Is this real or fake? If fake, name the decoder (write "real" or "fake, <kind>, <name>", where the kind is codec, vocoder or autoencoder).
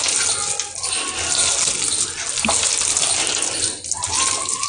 real